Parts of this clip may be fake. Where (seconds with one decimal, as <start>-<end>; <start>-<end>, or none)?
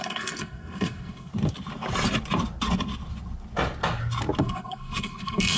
0.0-1.3; 4.4-5.6